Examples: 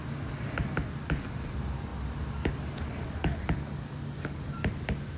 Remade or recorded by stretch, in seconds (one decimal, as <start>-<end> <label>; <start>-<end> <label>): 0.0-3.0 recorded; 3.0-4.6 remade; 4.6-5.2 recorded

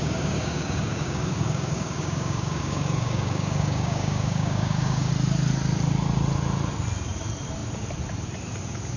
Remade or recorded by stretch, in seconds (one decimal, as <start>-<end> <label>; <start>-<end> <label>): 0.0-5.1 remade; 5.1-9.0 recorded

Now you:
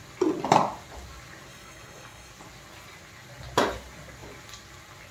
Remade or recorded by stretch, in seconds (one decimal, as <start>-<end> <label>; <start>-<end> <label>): 0.0-1.5 recorded; 1.5-2.3 remade; 2.3-5.1 recorded

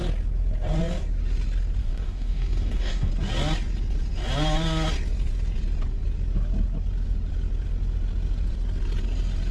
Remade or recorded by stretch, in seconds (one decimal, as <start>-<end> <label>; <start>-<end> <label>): 0.0-1.8 recorded; 1.8-3.1 remade; 3.1-9.5 recorded

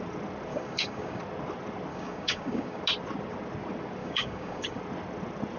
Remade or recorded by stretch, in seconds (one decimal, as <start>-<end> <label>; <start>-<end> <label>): 0.0-0.5 recorded; 0.5-1.2 remade; 1.2-1.9 recorded; 1.9-2.8 remade; 2.8-4.0 recorded; 4.0-4.8 remade; 4.8-5.6 recorded

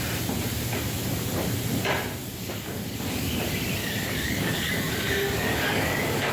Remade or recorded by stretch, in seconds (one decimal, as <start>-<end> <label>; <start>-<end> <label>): 0.0-2.2 recorded; 2.2-3.4 remade; 3.4-3.8 recorded; 3.8-6.3 remade

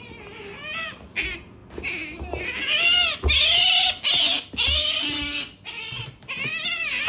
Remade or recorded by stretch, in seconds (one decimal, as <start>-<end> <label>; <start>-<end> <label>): 0.0-7.1 recorded

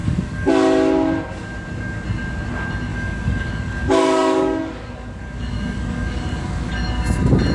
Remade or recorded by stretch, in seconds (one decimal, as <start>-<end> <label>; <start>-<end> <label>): 0.0-0.5 remade; 0.5-2.9 recorded; 2.9-6.7 remade; 6.7-7.5 recorded